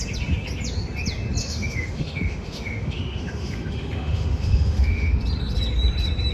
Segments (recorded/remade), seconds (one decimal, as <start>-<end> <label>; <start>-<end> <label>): 0.0-1.4 recorded; 1.4-5.2 remade; 5.2-6.3 recorded